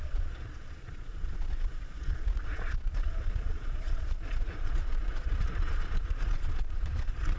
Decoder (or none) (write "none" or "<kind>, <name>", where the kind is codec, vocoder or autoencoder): vocoder, Vocos